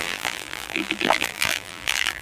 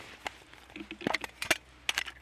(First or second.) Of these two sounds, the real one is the second